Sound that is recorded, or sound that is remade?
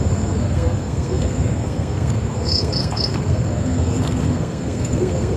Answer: remade